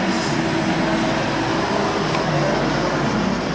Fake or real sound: real